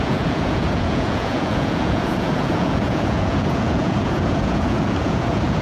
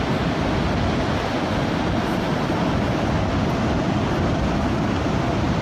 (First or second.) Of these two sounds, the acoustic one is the second